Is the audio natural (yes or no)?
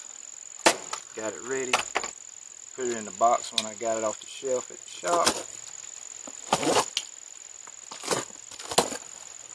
yes